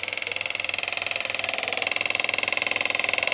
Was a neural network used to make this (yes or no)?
no